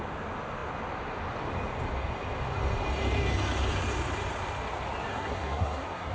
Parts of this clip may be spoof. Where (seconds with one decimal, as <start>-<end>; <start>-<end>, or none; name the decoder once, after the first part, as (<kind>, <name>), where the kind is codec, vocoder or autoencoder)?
5.1-6.1 (codec, SNAC)